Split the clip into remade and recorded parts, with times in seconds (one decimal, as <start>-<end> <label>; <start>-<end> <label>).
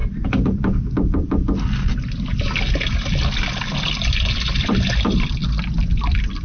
0.0-6.4 recorded